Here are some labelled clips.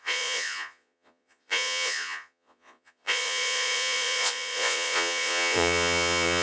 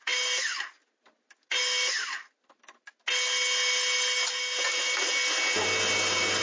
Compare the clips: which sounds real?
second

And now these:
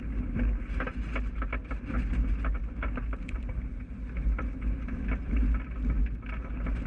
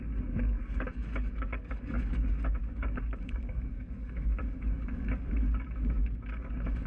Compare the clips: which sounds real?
first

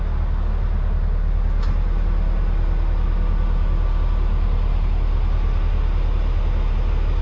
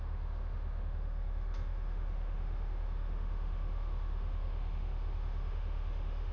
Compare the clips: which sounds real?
first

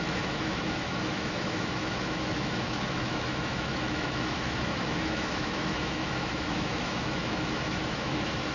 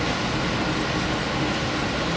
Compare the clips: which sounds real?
second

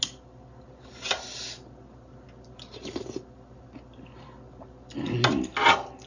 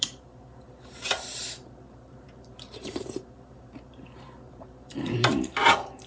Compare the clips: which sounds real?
first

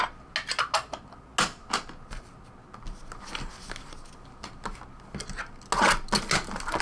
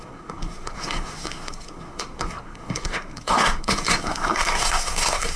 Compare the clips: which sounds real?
first